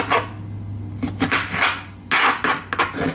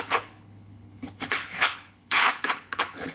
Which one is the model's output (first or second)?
second